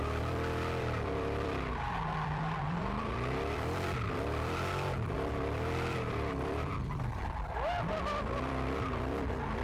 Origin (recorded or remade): remade